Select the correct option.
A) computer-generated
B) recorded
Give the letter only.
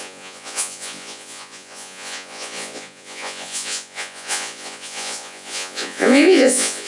A